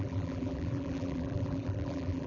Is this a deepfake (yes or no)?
yes